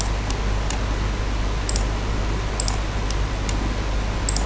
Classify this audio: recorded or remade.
recorded